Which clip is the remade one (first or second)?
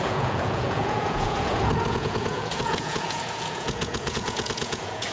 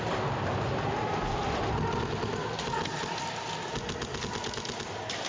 first